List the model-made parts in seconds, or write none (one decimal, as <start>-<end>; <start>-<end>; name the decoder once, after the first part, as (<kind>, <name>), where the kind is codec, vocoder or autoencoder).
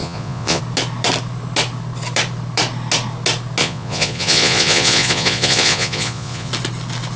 0.0-0.6 (vocoder, Vocos); 3.6-6.5